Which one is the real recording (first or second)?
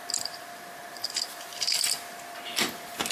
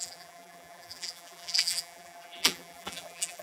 first